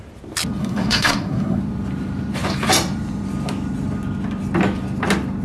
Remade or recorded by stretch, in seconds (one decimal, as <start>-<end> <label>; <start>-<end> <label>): 0.0-0.6 recorded; 0.6-1.6 remade; 1.6-5.4 recorded